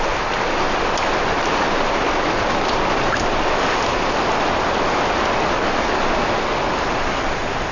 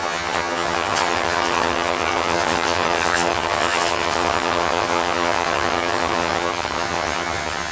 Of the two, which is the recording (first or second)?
first